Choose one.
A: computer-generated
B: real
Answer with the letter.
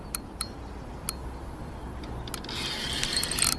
B